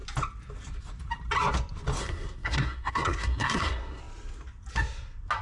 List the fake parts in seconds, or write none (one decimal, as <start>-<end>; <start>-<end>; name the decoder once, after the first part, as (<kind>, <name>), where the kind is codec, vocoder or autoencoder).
2.0-4.0 (codec, SNAC)